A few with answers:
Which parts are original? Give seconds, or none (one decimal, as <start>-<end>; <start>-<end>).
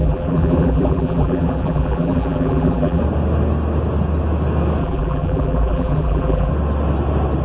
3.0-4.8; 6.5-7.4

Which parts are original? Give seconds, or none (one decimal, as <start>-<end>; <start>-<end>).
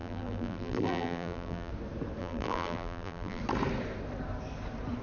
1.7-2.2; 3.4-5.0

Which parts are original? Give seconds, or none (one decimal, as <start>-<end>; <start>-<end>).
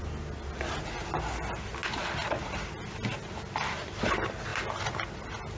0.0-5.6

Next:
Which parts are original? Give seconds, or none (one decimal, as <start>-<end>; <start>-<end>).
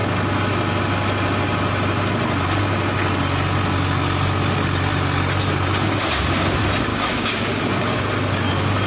0.0-6.9; 8.0-8.9